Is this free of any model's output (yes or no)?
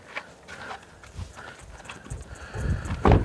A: yes